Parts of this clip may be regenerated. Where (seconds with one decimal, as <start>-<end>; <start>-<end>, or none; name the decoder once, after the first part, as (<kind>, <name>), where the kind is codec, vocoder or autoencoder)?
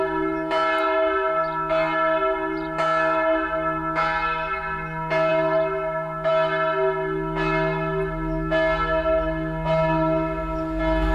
none